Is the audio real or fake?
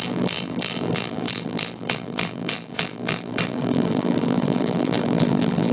fake